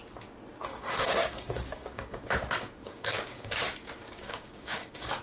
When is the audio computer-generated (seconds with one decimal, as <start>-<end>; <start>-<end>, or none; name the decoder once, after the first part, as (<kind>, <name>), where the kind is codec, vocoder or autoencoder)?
0.7-2.3 (codec, DAC); 2.8-3.6; 4.0-5.2